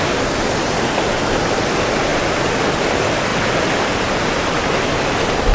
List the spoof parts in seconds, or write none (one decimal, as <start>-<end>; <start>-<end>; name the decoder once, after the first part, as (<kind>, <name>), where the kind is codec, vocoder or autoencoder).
3.3-4.6 (vocoder, BigVGAN v2)